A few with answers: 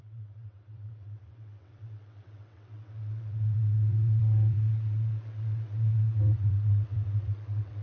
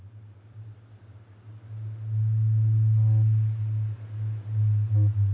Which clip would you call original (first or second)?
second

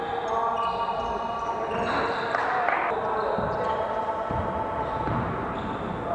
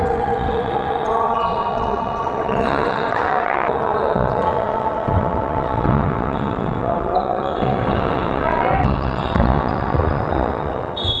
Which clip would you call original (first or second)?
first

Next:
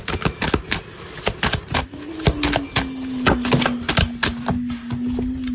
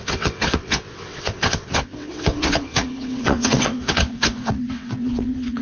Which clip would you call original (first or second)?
first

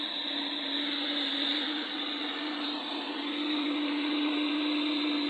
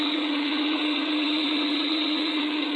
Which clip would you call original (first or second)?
first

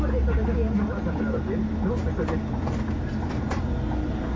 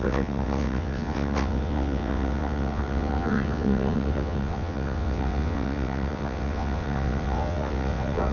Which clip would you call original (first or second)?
first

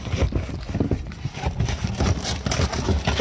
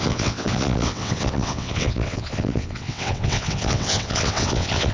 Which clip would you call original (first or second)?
first